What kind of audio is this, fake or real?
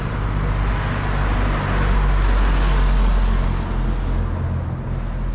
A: real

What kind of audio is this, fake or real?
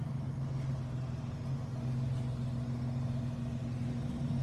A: real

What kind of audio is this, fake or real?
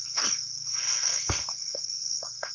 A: fake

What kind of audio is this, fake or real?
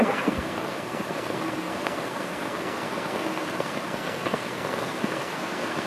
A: fake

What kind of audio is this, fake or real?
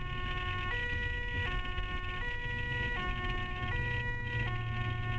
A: real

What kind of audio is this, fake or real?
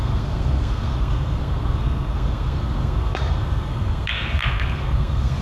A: fake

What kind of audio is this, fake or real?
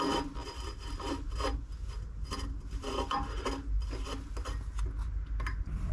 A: real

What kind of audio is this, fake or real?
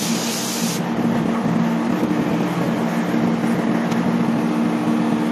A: real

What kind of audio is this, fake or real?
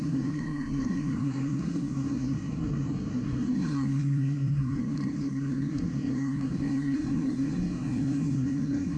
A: fake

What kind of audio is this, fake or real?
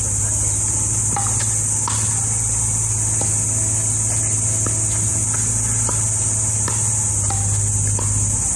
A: real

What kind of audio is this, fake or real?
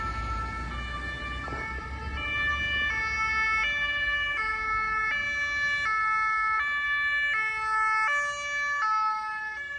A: real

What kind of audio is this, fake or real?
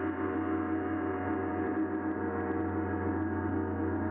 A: real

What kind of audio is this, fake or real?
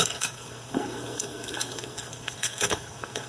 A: fake